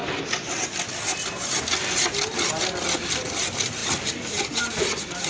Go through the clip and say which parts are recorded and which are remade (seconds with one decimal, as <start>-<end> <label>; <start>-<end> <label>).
0.0-5.3 recorded